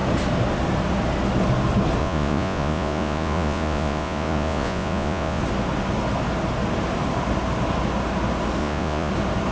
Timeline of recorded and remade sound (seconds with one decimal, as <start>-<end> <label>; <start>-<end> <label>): 0.0-2.0 recorded; 2.0-5.4 remade; 5.4-8.6 recorded; 8.6-9.1 remade; 9.1-9.5 recorded